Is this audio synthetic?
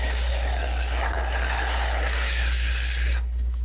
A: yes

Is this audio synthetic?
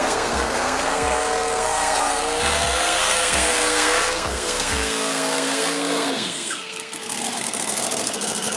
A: yes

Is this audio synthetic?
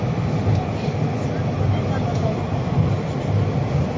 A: no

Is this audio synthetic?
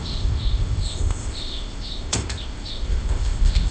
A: yes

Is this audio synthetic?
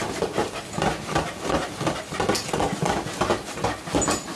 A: no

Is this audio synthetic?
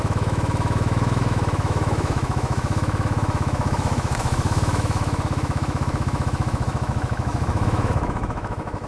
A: yes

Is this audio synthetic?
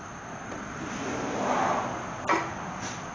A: no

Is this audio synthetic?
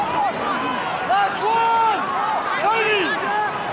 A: no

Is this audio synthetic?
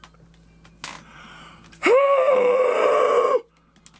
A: no